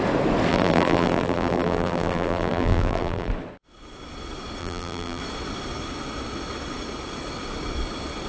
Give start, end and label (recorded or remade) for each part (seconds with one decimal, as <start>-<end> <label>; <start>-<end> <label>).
0.0-0.5 recorded; 0.5-3.3 remade; 3.3-4.6 recorded; 4.6-5.2 remade; 5.2-8.3 recorded